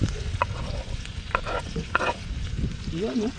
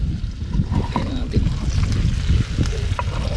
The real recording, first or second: second